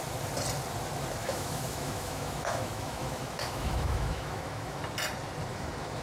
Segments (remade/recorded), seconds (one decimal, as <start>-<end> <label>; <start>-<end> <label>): 0.0-1.2 recorded; 1.2-4.8 remade; 4.8-5.5 recorded; 5.5-6.0 remade